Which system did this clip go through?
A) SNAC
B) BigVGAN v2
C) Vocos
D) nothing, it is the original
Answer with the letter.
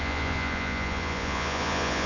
C